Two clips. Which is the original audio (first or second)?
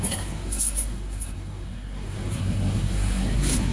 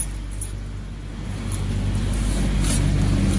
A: second